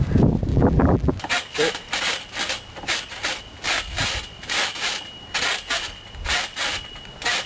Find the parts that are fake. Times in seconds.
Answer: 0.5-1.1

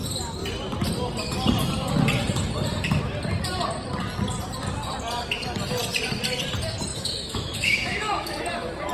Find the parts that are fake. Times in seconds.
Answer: 6.9-8.4

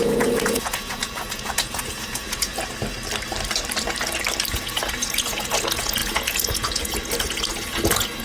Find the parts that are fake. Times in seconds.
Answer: 0.0-2.5; 4.5-8.2